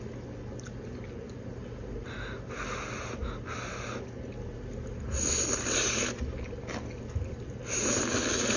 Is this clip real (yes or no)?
yes